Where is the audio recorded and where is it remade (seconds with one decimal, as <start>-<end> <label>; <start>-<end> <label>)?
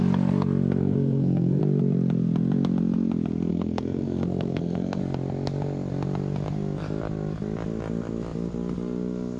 0.0-0.8 recorded; 0.8-1.6 remade; 1.6-3.5 recorded; 3.5-5.0 remade; 5.0-9.4 recorded